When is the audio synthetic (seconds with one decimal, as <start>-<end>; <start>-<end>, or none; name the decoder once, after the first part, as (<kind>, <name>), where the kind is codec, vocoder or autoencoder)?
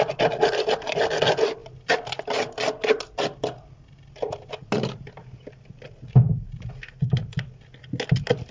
none